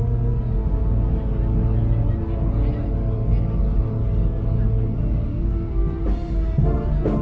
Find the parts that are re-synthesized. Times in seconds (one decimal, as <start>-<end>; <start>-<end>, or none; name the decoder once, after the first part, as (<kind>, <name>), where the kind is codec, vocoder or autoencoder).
none